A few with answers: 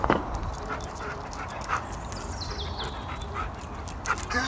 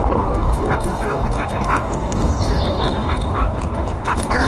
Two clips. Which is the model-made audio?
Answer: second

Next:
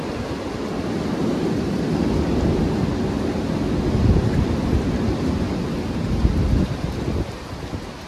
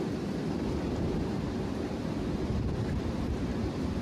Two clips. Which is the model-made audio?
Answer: second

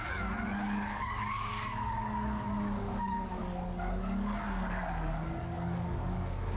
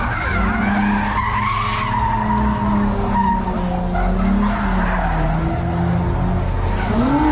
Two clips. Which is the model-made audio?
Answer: first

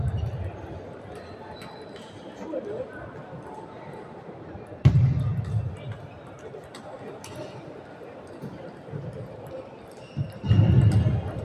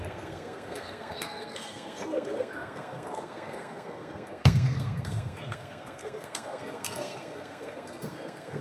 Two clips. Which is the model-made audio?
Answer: second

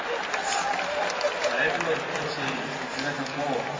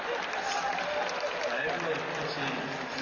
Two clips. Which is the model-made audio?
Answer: first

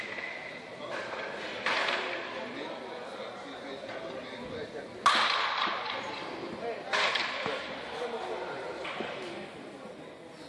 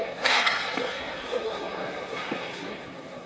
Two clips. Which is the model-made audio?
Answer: second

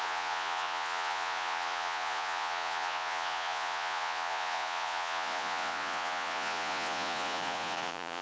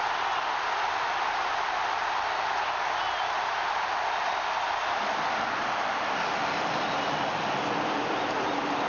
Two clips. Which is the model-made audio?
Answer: first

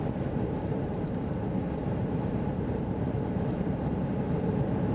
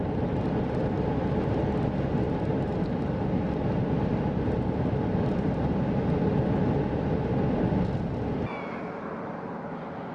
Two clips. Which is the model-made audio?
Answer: first